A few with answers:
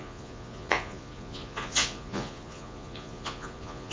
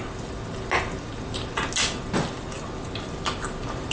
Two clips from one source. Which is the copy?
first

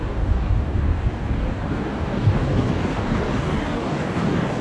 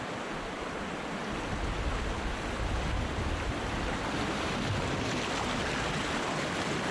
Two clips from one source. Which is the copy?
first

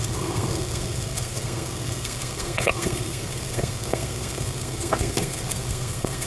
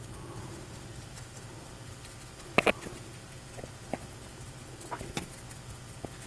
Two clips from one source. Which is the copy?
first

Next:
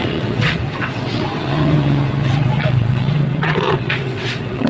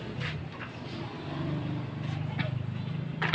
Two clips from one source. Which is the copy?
first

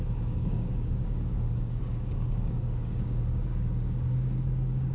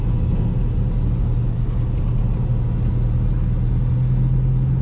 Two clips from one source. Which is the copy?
first